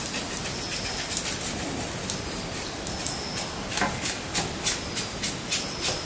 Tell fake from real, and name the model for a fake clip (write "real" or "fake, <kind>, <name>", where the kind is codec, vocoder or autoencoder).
real